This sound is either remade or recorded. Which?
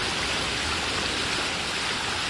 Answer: recorded